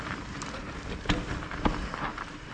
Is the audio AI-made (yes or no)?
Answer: no